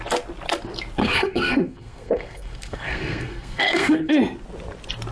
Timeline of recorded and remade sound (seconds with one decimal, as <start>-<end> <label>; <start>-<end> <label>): 0.0-1.0 recorded; 1.0-4.1 remade; 4.1-5.1 recorded